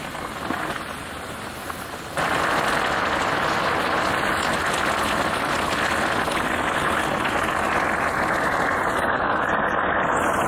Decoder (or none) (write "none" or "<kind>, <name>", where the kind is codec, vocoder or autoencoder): none